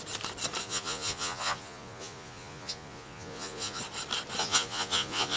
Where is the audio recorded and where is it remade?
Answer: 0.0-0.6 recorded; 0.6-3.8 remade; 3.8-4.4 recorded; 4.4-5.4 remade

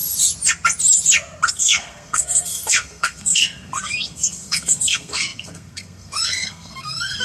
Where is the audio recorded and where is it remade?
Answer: 0.0-1.5 recorded; 1.5-7.2 remade

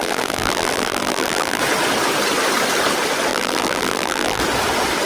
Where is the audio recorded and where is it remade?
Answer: 0.0-1.6 remade; 1.6-3.3 recorded; 3.3-4.4 remade; 4.4-5.1 recorded

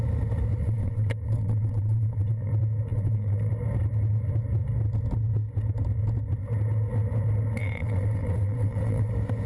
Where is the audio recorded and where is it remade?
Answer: 0.0-0.6 recorded; 0.6-2.5 remade; 2.5-2.9 recorded; 2.9-3.5 remade; 3.5-7.6 recorded; 7.6-9.1 remade; 9.1-9.5 recorded